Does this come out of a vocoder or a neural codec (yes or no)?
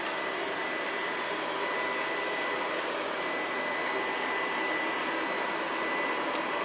no